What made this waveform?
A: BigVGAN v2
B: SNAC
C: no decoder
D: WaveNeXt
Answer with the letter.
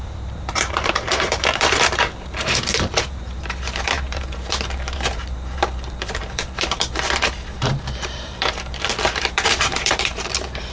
A